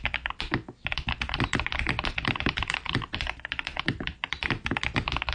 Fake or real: fake